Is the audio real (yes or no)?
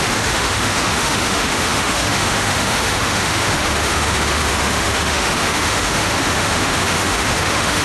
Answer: no